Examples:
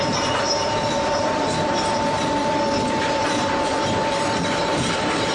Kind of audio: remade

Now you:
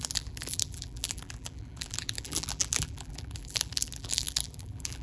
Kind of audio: remade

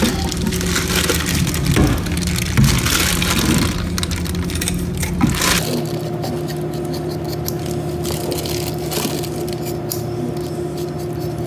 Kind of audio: recorded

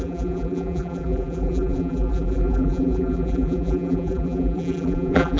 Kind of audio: remade